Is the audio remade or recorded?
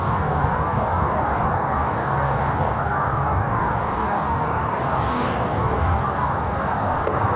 remade